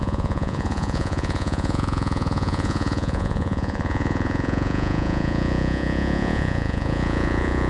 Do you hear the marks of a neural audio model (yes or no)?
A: yes